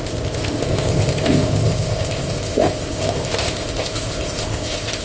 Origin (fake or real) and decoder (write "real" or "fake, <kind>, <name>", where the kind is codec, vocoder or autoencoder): fake, codec, ZipCodec